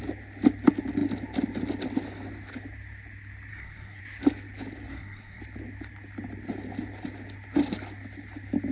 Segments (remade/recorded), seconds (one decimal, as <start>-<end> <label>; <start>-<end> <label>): 0.0-3.5 recorded; 3.5-4.0 remade; 4.0-4.9 recorded; 4.9-5.4 remade; 5.4-8.7 recorded